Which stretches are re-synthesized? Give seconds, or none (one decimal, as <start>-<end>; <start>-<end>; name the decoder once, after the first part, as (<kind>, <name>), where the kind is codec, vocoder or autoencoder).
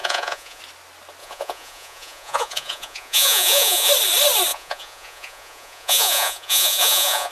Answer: 0.0-0.6 (vocoder, Vocos); 1.2-3.9; 4.5-7.3